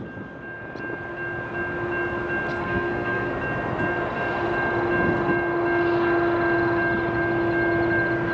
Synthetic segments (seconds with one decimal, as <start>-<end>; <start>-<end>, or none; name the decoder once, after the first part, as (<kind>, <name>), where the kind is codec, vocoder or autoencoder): 2.5-3.3 (codec, SNAC)